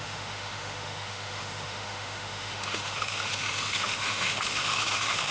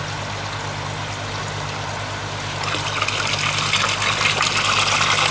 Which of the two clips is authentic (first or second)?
second